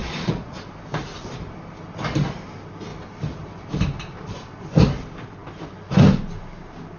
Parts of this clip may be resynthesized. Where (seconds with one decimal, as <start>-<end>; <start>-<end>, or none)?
0.0-0.6